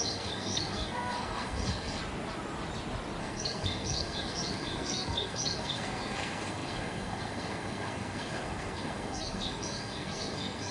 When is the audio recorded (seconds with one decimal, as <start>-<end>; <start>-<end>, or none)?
2.0-3.2